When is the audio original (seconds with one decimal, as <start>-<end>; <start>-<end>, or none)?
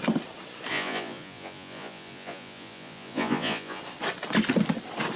0.0-0.7; 3.8-5.2